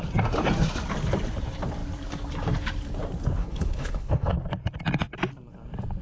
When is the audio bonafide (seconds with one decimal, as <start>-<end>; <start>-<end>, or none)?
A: 0.0-3.4; 4.3-6.0